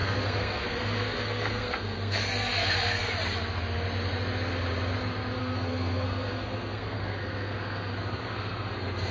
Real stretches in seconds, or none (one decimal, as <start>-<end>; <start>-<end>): 3.1-5.4